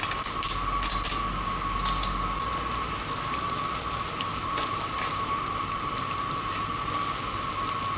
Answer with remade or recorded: recorded